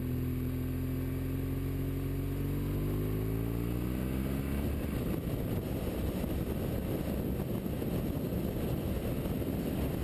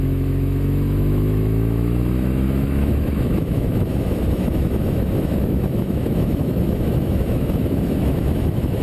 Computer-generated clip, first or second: second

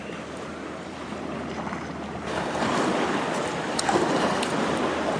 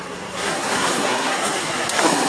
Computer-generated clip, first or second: second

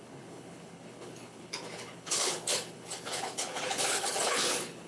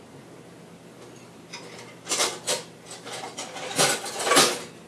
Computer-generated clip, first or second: first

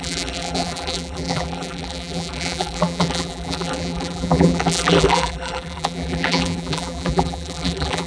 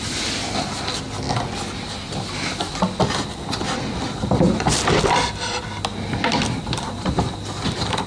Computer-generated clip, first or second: first